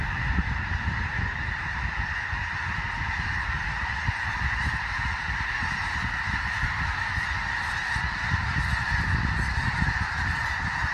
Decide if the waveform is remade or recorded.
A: recorded